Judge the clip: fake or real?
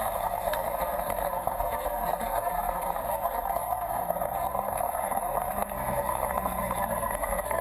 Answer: fake